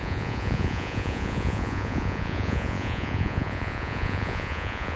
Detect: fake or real fake